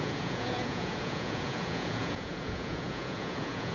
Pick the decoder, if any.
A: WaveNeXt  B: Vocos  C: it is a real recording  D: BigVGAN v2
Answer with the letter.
B